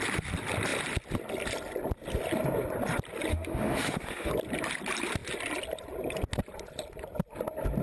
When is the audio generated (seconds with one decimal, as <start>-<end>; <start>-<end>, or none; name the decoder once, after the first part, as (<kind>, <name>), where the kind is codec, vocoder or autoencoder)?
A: 3.3-4.3 (autoencoder, DAC-VAE)